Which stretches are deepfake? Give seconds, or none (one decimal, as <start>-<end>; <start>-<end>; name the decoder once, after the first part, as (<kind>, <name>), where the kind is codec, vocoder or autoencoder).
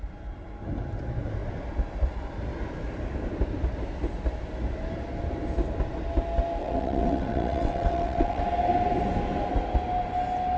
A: 6.6-8.4 (vocoder, WaveNeXt)